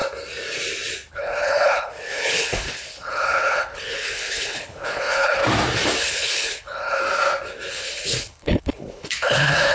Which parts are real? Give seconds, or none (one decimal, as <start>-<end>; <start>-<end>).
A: 0.0-1.1; 5.4-6.0; 7.0-7.7